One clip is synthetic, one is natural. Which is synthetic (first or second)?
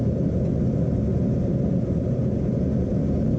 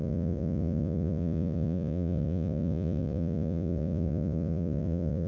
second